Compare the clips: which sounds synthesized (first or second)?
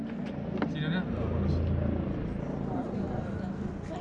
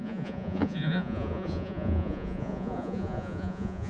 second